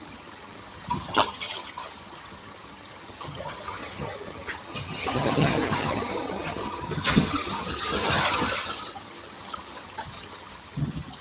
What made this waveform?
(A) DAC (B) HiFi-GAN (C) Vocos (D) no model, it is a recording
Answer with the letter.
B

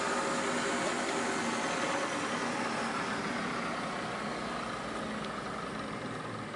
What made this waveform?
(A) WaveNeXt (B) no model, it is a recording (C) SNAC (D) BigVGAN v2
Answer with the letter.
B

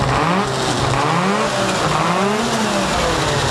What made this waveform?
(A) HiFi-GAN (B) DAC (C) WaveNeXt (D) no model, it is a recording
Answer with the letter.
D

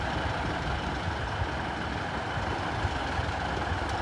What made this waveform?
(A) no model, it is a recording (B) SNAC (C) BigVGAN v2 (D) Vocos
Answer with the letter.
A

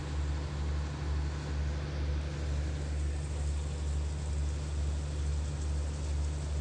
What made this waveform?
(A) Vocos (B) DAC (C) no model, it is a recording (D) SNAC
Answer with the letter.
C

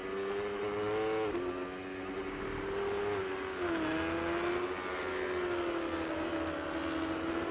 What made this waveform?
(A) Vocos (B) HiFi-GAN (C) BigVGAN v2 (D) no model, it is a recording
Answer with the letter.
D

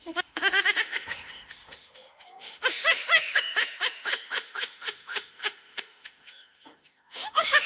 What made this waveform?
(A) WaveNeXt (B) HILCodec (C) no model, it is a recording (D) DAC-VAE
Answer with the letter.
D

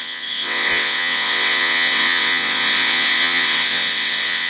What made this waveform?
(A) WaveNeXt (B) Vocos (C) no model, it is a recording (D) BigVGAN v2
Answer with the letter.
A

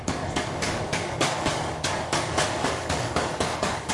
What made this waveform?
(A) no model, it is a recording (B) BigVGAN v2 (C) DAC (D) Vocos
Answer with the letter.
C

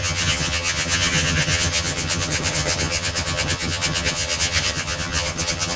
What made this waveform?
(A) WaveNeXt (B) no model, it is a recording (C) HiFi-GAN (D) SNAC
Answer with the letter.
C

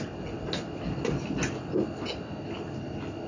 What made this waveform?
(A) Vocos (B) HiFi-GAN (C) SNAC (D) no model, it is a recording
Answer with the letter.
D